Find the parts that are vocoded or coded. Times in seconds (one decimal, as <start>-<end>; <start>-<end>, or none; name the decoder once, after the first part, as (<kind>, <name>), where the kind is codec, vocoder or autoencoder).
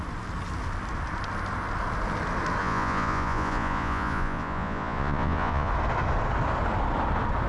2.6-5.7 (vocoder, Vocos)